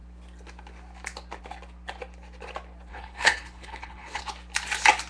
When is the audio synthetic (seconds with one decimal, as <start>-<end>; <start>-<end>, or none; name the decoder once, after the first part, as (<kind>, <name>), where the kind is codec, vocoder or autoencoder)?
2.9-4.2 (codec, HILCodec)